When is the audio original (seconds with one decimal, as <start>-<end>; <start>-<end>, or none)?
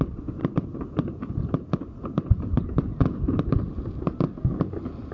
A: 0.0-5.1